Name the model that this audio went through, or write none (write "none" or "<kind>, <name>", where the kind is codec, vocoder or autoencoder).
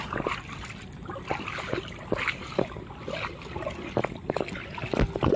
none